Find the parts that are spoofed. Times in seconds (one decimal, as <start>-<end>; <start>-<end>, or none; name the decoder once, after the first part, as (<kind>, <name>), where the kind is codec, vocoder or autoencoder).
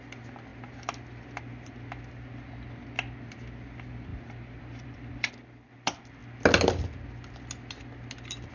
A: 4.1-5.3 (vocoder, BigVGAN v2)